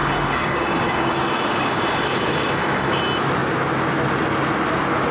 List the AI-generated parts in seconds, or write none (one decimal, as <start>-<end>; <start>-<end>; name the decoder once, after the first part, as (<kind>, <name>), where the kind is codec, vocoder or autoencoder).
0.0-3.0 (codec, DAC)